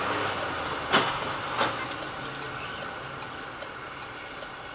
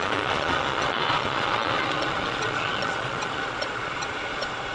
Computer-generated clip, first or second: second